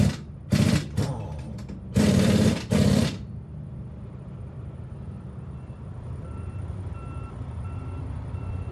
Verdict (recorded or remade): remade